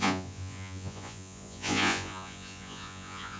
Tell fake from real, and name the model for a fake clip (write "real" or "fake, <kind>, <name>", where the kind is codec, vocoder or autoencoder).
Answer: fake, vocoder, Vocos